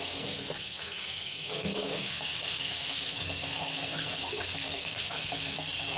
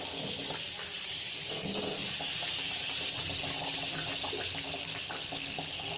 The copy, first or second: first